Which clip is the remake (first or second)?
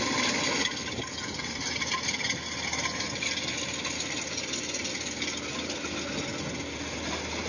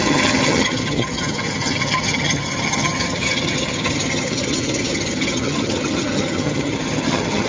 second